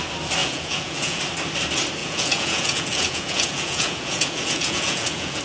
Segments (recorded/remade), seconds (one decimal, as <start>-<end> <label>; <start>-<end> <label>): 0.0-0.4 recorded; 0.4-1.2 remade; 1.2-2.0 recorded; 2.0-5.4 remade